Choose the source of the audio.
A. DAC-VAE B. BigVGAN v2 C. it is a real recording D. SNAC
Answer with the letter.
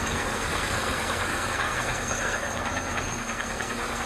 D